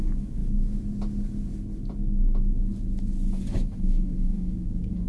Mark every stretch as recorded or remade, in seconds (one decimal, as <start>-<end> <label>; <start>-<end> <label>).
0.0-0.4 remade; 0.4-3.5 recorded; 3.5-5.1 remade